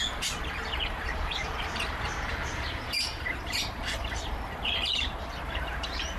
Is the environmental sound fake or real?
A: fake